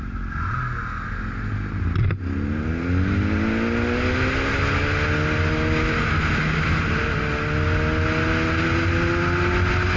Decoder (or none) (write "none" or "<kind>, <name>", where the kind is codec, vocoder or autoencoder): none